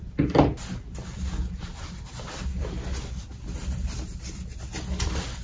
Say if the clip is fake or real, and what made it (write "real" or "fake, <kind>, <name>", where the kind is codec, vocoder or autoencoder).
real